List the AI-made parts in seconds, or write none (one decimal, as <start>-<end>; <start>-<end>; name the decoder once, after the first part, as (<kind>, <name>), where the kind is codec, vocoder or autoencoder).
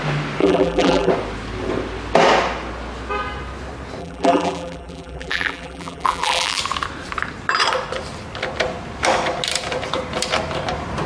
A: 0.4-1.1 (vocoder, BigVGAN v2); 4.0-6.6